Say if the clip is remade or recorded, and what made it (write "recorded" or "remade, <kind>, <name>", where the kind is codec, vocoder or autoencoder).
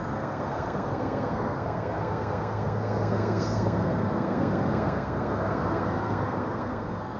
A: remade, codec, SNAC